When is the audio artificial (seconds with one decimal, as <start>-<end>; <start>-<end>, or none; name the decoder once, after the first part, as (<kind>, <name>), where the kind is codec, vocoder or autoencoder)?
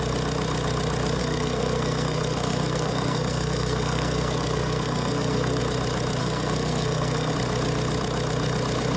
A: 1.2-5.6 (codec, SNAC); 6.2-7.3